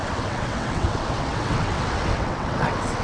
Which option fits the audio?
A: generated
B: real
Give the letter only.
A